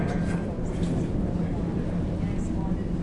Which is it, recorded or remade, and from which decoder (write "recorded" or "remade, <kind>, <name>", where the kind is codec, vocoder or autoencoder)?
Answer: recorded